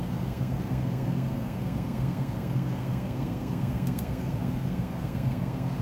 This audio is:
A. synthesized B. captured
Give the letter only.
A